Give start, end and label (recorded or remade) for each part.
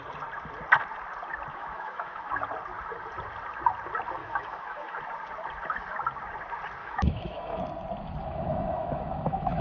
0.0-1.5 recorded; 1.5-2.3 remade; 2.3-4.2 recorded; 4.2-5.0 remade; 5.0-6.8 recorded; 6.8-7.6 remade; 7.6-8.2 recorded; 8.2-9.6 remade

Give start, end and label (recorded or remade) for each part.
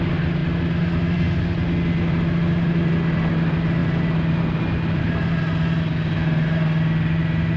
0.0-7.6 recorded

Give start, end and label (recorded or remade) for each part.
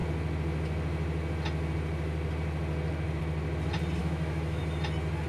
0.0-4.0 recorded; 4.0-4.6 remade; 4.6-5.3 recorded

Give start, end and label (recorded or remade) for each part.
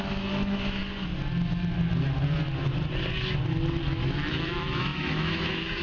0.0-0.8 remade; 0.8-4.3 recorded; 4.3-5.8 remade